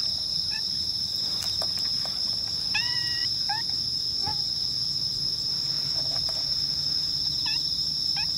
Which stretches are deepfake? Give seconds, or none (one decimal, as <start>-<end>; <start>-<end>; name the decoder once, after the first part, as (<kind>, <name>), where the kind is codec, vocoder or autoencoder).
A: 0.0-3.2 (vocoder, BigVGAN v2); 3.8-4.3; 4.9-8.4